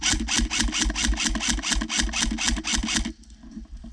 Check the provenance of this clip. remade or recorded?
recorded